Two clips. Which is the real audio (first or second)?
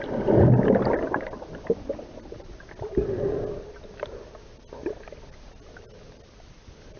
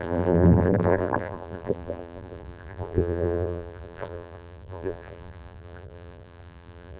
first